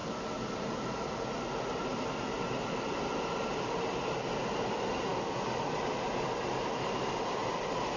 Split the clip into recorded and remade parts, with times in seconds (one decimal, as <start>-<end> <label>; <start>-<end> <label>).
0.0-8.0 recorded

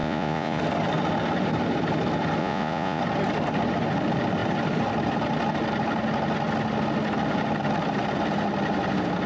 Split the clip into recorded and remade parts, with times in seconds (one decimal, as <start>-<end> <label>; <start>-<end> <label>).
0.0-0.6 remade; 0.6-2.4 recorded; 2.4-3.0 remade; 3.0-9.3 recorded

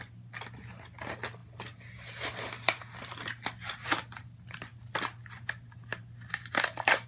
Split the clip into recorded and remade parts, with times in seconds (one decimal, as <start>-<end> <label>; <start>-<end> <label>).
0.0-7.1 recorded

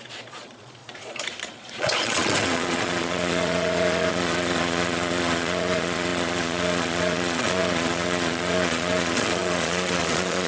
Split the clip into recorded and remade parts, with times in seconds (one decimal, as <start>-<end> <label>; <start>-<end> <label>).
0.0-10.5 remade

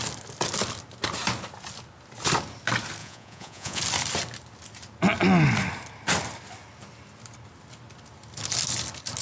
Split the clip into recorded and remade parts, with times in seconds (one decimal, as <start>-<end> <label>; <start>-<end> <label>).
0.0-3.0 recorded; 3.0-3.8 remade; 3.8-9.2 recorded

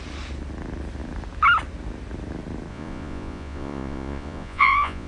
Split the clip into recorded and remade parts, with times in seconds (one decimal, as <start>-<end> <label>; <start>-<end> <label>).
0.0-2.7 recorded; 2.7-5.1 remade